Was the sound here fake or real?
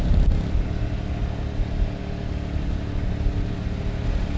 real